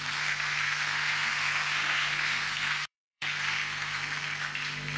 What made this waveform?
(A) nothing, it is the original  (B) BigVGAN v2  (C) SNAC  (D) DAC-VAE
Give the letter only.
C